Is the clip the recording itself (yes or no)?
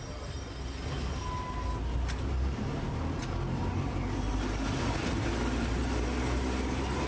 yes